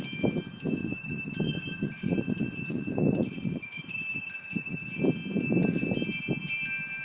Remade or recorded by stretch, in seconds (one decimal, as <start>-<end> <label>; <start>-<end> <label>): 0.0-0.8 recorded; 0.8-5.0 remade; 5.0-7.0 recorded